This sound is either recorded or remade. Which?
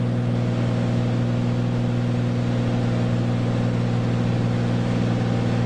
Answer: recorded